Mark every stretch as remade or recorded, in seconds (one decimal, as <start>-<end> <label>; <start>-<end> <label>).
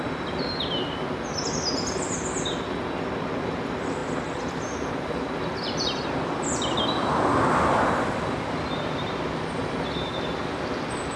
0.0-11.2 recorded